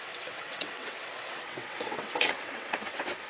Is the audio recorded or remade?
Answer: remade